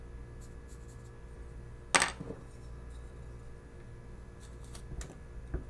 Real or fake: real